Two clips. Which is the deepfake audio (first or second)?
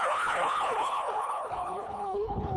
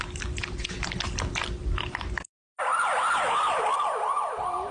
first